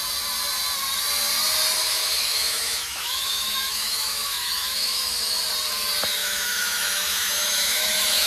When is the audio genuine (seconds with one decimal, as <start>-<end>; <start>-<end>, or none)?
0.0-1.8; 5.4-6.2